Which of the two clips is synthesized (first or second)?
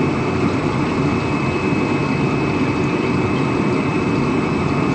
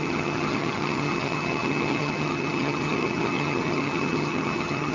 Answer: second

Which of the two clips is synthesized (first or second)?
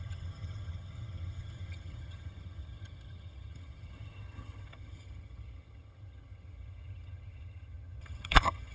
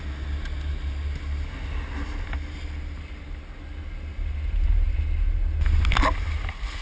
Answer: first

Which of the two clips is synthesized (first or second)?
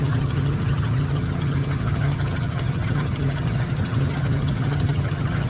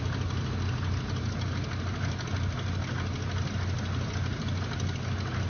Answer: first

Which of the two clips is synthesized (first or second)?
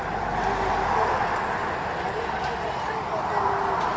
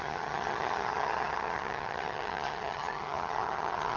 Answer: second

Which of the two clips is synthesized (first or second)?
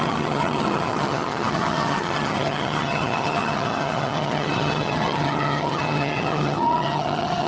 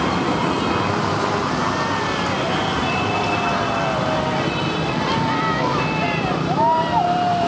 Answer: first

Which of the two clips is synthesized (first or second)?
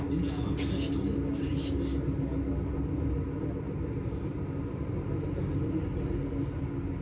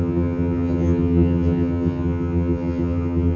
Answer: second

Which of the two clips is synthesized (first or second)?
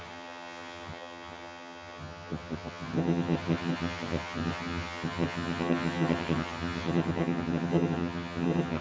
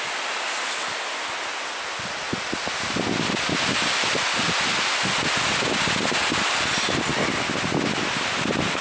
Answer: first